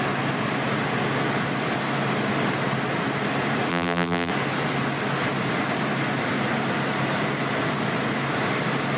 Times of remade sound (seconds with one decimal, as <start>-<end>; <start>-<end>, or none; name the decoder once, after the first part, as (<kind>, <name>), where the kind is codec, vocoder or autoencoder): 3.7-4.3 (vocoder, BigVGAN v2)